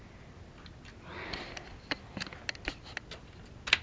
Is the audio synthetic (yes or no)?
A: no